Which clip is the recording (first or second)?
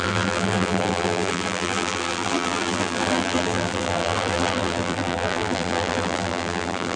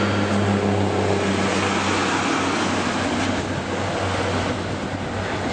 second